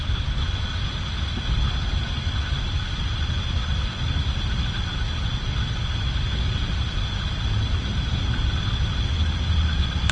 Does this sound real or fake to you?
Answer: real